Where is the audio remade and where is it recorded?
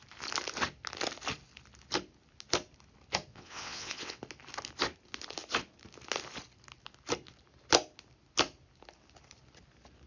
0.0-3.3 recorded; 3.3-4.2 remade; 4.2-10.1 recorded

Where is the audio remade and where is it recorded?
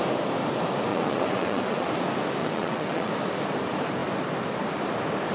0.0-0.9 recorded; 0.9-1.9 remade; 1.9-2.4 recorded; 2.4-3.1 remade; 3.1-5.3 recorded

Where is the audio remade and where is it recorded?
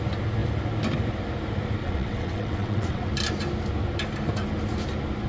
0.0-1.8 recorded; 1.8-3.1 remade; 3.1-5.3 recorded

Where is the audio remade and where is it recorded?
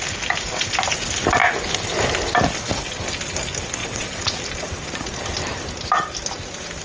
0.0-3.8 recorded; 3.8-4.4 remade; 4.4-6.8 recorded